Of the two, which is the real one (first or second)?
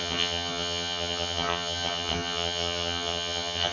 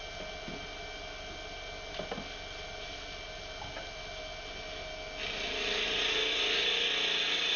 second